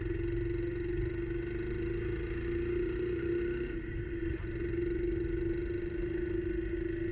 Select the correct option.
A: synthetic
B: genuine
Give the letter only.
B